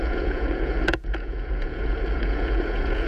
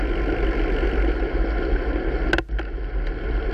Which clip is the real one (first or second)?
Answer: second